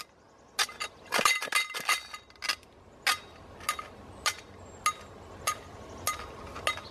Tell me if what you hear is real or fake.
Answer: real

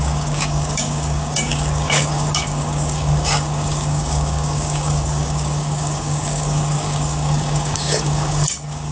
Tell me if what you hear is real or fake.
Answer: fake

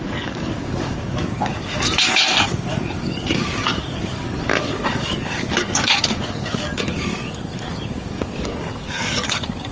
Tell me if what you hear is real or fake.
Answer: fake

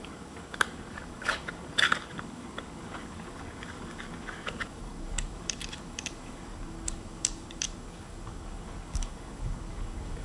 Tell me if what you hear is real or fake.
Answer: fake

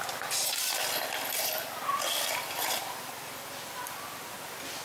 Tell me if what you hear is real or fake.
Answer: real